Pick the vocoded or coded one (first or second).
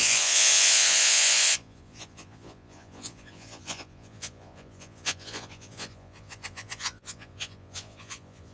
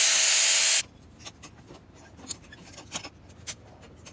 first